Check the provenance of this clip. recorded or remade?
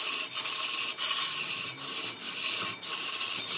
recorded